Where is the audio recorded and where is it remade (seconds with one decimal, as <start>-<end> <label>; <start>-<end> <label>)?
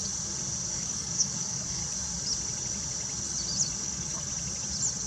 0.0-0.7 recorded; 0.7-1.8 remade; 1.8-3.8 recorded; 3.8-4.3 remade; 4.3-5.1 recorded